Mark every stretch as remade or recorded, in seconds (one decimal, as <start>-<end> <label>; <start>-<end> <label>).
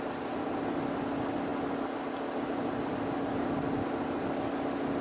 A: 0.0-5.0 recorded